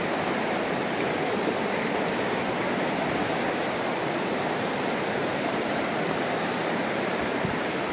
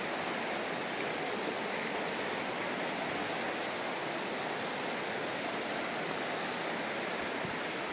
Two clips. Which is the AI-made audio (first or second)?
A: first